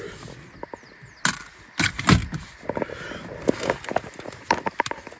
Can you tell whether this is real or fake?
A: real